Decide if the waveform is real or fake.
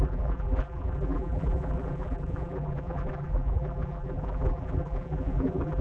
fake